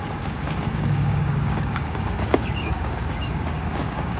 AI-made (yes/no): yes